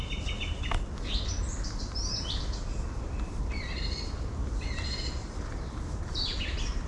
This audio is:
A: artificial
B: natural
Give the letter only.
B